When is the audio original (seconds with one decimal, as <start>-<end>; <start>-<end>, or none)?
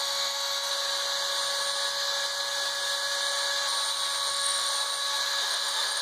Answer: 0.7-4.3; 4.7-5.3